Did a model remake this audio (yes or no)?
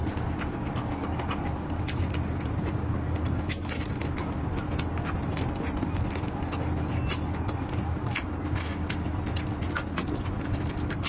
no